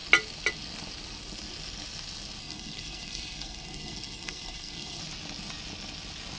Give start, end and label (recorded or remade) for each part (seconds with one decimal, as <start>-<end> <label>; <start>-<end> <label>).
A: 0.0-2.4 recorded; 2.4-5.0 remade; 5.0-6.4 recorded